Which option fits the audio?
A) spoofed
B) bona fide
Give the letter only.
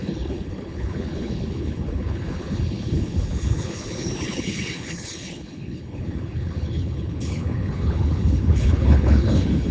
A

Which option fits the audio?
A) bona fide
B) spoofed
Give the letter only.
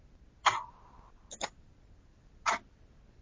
A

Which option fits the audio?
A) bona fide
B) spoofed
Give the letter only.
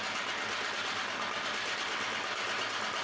A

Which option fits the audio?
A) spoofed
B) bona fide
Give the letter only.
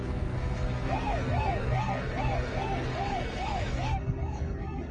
A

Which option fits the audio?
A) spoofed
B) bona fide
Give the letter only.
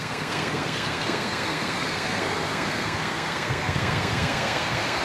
A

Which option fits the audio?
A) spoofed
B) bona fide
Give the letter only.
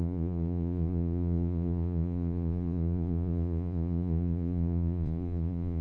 A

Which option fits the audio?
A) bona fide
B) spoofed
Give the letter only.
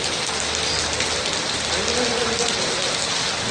A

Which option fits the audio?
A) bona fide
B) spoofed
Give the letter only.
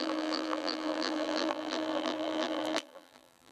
B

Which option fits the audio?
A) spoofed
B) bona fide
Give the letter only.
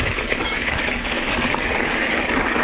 A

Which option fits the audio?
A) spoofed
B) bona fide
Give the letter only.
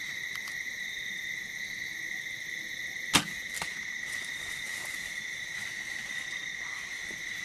B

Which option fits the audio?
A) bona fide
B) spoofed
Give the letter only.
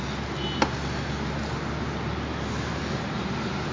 A